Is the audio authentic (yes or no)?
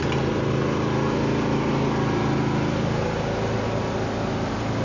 yes